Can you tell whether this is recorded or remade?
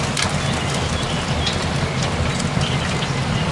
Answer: recorded